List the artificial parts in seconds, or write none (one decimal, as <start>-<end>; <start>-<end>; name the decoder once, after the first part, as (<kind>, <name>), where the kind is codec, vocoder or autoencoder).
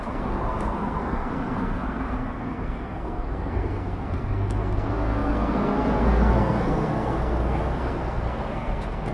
0.0-9.1 (codec, SNAC)